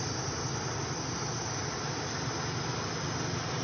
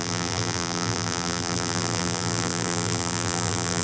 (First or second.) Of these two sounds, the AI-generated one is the second